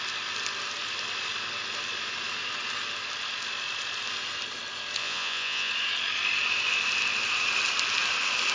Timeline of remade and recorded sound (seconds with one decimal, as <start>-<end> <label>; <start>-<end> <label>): 0.0-5.0 recorded; 5.0-5.7 remade; 5.7-8.5 recorded